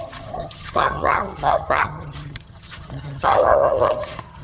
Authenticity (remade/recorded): remade